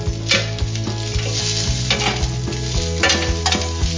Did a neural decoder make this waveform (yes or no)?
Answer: no